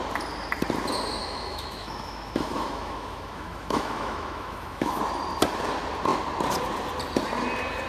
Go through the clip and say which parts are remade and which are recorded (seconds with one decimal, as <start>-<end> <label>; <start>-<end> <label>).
0.0-1.2 recorded; 1.2-5.0 remade; 5.0-7.9 recorded